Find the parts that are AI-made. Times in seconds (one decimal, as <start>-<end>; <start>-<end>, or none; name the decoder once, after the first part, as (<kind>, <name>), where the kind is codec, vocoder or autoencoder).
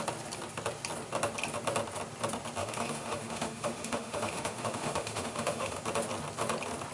2.6-5.8 (autoencoder, DAC-VAE)